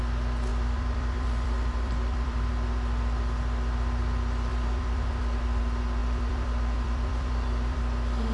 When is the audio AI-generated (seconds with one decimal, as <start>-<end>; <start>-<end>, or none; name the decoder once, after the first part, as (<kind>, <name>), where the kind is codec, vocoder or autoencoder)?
0.5-2.5 (vocoder, BigVGAN v2); 4.5-5.6; 6.0-7.8